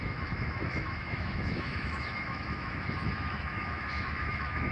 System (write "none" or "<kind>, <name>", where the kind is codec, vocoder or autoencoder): autoencoder, DAC-VAE